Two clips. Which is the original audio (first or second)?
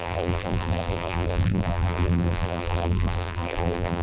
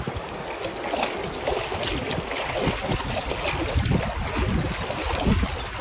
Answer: second